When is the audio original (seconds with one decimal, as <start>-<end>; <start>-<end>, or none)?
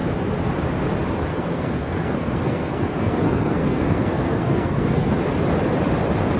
0.0-1.3; 5.1-6.4